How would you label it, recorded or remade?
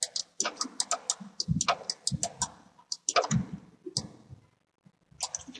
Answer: recorded